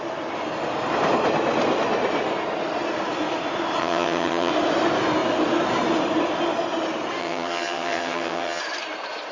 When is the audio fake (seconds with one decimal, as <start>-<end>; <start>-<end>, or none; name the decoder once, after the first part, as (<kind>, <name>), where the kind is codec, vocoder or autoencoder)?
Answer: 3.8-4.5 (vocoder, HiFi-GAN); 7.2-8.6